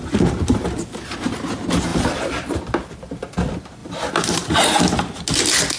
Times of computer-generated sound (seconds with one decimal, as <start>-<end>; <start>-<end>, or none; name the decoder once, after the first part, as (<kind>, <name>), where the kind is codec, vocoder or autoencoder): 1.9-2.6 (vocoder, BigVGAN v2); 3.8-4.6